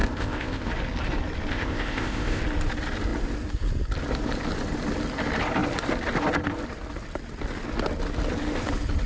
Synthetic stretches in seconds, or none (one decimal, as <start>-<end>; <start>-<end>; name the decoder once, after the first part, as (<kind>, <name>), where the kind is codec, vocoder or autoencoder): 0.0-0.7 (codec, ZipCodec); 1.5-2.4